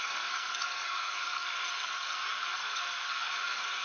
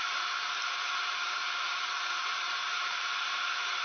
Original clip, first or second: second